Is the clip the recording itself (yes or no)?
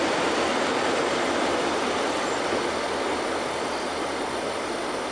yes